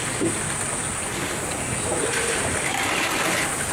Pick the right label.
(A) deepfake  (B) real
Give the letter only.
B